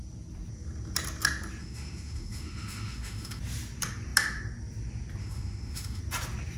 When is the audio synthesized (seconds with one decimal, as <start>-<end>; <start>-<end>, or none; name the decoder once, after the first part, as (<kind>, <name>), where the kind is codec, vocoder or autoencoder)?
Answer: 1.6-3.4 (autoencoder, DAC-VAE); 5.2-6.0